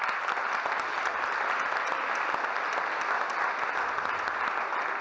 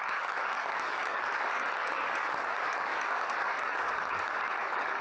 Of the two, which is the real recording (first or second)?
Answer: first